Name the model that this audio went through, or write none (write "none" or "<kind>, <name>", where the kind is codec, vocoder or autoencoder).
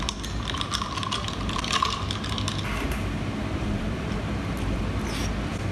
none